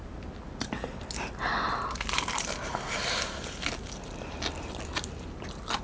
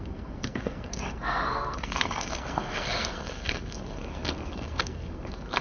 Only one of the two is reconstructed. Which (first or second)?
second